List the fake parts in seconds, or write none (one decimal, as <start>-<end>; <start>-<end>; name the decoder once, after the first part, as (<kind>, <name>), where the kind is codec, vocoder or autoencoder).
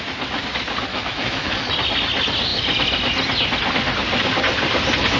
0.9-1.7 (autoencoder, DAC-VAE)